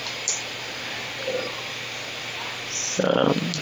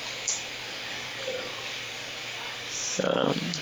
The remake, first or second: second